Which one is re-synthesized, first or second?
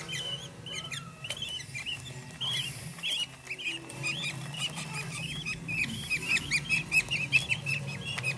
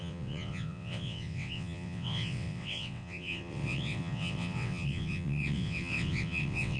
second